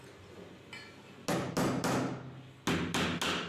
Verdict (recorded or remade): recorded